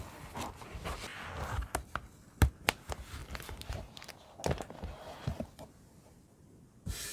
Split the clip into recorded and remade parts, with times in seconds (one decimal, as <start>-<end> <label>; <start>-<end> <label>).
0.0-3.2 recorded; 3.2-4.0 remade; 4.0-7.1 recorded